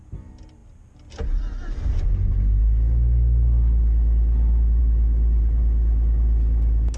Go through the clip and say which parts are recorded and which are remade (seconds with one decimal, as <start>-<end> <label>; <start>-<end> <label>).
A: 0.0-7.0 recorded